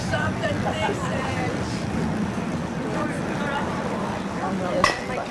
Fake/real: fake